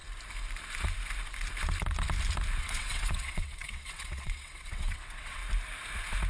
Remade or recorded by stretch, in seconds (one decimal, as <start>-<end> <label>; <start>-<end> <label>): 0.0-2.6 recorded; 2.6-5.4 remade; 5.4-6.3 recorded